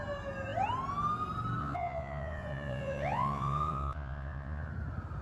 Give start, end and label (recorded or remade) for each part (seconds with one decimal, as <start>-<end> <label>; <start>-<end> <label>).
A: 0.0-1.6 recorded; 1.6-4.7 remade; 4.7-5.2 recorded